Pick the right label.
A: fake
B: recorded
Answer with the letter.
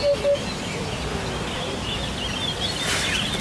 B